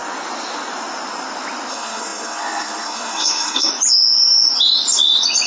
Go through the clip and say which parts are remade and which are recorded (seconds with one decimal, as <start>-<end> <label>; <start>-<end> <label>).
0.0-1.7 recorded; 1.7-3.7 remade; 3.7-5.5 recorded